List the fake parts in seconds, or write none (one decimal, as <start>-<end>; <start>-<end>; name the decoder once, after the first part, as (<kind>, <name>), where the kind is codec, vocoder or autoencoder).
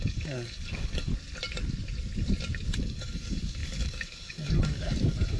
0.0-1.1 (codec, DAC); 2.7-5.4